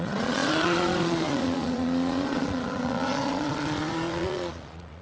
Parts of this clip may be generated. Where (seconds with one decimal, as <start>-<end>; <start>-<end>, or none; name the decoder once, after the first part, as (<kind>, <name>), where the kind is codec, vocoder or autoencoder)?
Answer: 0.0-5.0 (vocoder, Vocos)